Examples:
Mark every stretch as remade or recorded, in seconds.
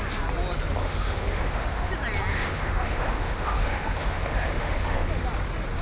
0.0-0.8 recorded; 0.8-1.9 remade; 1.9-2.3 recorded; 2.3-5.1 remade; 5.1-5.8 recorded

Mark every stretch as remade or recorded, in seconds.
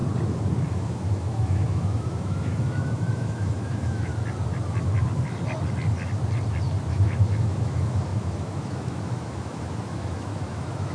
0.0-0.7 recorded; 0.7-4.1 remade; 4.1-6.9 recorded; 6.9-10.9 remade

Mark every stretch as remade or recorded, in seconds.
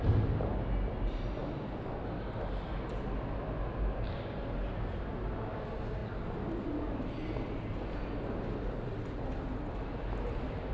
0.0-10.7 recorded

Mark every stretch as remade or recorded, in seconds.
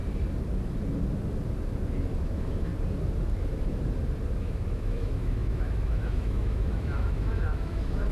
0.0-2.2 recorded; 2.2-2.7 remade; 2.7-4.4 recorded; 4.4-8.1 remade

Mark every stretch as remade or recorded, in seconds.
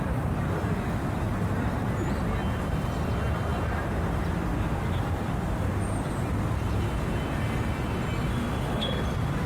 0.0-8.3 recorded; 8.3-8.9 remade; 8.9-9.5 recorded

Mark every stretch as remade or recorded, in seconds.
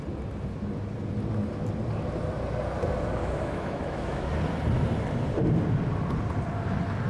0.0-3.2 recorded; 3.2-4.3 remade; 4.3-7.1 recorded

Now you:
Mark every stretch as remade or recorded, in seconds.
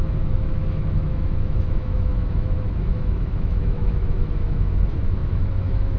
0.0-6.0 remade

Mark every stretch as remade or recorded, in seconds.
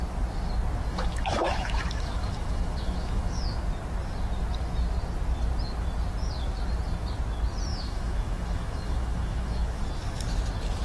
0.0-0.9 recorded; 0.9-3.4 remade; 3.4-7.7 recorded; 7.7-9.8 remade; 9.8-10.8 recorded